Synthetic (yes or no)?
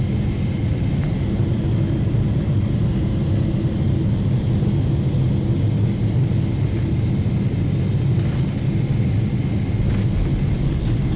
no